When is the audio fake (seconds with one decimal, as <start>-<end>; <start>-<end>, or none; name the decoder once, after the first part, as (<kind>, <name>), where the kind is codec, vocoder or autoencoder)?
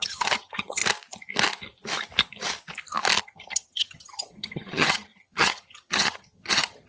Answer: 0.0-0.8 (vocoder, HiFi-GAN); 3.2-6.9